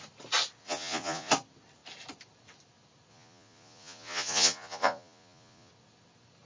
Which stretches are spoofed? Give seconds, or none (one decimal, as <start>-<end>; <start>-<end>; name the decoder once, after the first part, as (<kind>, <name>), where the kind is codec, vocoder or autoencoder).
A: 0.6-1.3 (vocoder, Vocos); 3.1-5.7